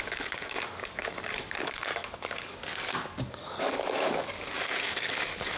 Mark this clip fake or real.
fake